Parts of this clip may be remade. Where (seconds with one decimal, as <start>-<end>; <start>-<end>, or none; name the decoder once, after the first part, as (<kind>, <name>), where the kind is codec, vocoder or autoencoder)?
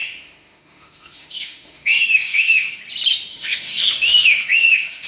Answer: 0.0-2.8 (autoencoder, DAC-VAE); 3.3-5.1